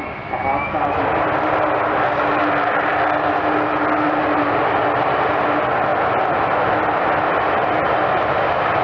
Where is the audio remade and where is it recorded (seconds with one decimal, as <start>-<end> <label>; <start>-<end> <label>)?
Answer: 0.0-8.8 recorded